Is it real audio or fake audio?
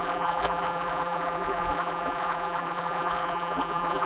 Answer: fake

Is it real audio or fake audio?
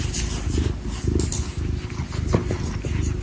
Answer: real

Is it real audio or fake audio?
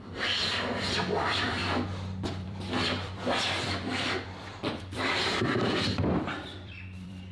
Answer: fake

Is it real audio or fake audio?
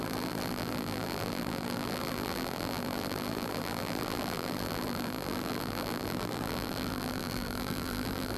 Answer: fake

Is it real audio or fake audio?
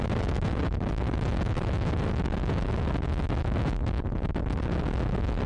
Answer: real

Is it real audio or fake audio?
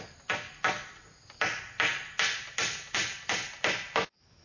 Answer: real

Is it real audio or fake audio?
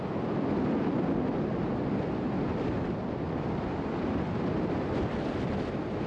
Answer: real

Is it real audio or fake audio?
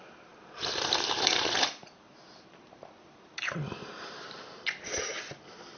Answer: fake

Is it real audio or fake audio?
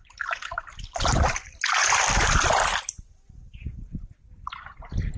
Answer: real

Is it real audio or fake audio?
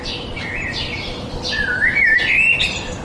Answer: real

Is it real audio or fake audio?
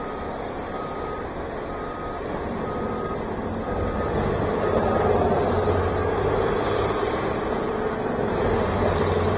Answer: fake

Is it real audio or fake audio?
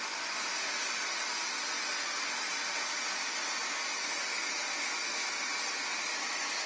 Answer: real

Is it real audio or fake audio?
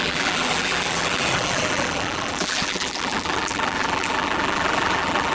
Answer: fake